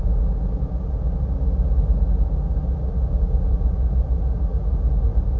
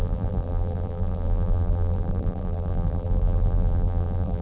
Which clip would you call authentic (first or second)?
first